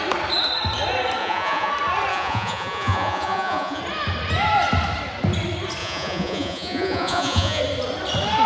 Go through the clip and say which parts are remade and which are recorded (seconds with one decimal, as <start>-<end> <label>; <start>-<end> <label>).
0.0-1.2 recorded; 1.2-1.7 remade; 1.7-2.1 recorded; 2.1-3.8 remade; 3.8-5.8 recorded; 5.8-7.6 remade; 7.6-8.5 recorded